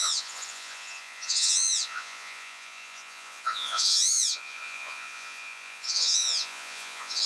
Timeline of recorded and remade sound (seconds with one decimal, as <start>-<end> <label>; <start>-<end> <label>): 0.0-7.3 remade